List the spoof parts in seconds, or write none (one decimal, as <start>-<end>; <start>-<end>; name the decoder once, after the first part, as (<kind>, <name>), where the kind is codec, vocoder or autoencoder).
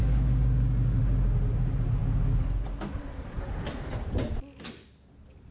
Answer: 0.0-1.0 (codec, DAC)